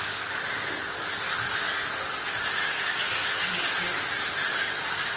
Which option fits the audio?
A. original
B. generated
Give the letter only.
A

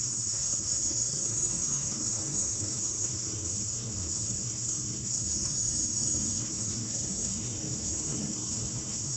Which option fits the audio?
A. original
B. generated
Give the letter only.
B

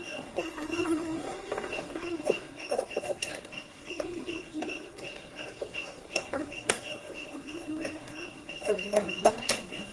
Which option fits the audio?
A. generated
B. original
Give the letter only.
A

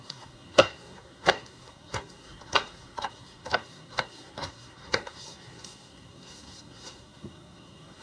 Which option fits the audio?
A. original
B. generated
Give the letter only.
B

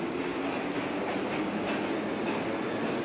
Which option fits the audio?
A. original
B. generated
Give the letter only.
A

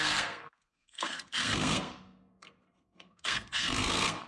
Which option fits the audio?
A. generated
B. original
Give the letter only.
A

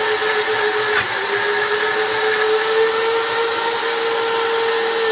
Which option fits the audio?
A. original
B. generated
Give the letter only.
A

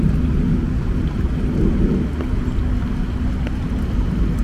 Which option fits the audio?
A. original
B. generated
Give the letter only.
A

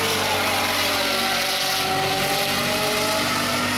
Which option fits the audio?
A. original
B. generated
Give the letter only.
A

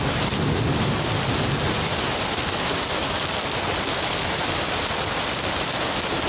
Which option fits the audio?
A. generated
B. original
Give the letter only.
B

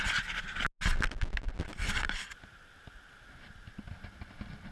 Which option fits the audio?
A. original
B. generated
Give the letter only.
A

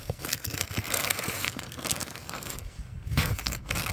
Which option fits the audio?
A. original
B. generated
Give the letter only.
B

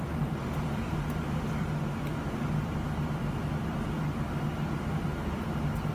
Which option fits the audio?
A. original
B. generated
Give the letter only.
A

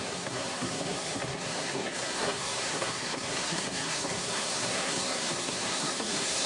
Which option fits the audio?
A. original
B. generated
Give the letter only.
B